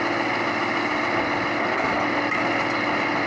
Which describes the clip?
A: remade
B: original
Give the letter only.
B